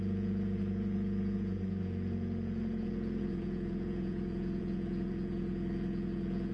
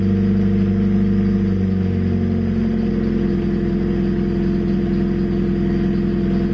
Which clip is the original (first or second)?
second